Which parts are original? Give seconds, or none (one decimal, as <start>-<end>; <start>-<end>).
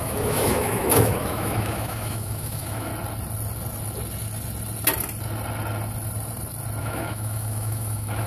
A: 2.9-6.8